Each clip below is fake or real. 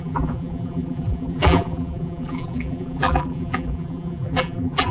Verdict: fake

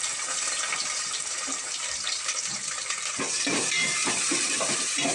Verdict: fake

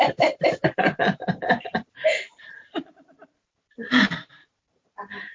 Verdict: fake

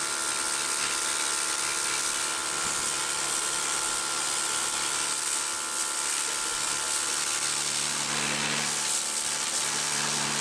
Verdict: fake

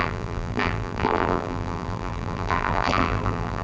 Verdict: fake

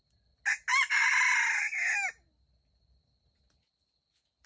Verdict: real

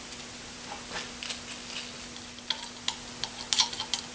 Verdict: real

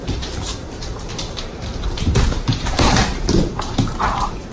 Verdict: fake